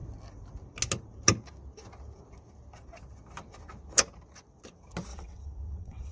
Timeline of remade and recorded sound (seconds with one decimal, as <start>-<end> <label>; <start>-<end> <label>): 0.0-5.1 recorded; 5.1-6.1 remade